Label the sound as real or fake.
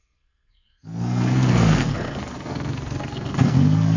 fake